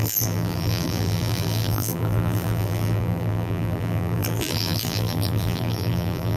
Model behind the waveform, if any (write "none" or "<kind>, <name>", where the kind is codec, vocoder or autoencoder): vocoder, BigVGAN v2